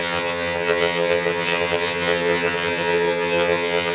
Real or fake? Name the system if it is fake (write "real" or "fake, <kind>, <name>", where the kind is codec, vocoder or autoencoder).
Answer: fake, vocoder, HiFi-GAN